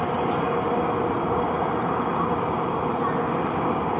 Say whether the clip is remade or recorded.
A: remade